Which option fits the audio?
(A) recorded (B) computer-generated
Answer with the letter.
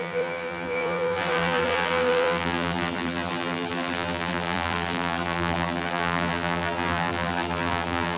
B